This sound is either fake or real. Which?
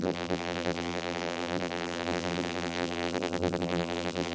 fake